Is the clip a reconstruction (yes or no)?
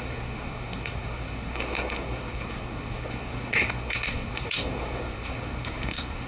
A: yes